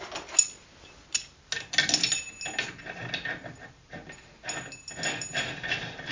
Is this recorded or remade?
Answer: recorded